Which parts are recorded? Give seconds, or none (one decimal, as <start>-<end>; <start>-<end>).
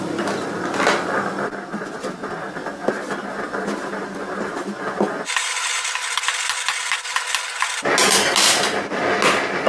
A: 0.0-9.7